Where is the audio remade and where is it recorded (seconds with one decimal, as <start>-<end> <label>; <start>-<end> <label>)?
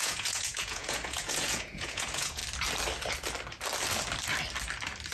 0.0-2.4 remade; 2.4-5.1 recorded